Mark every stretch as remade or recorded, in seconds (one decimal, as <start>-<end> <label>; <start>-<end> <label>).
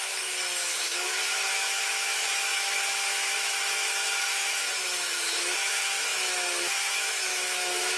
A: 0.0-8.0 remade